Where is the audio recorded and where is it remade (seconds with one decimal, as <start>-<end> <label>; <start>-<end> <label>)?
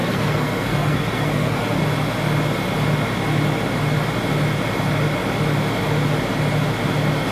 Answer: 0.0-1.8 remade; 1.8-7.3 recorded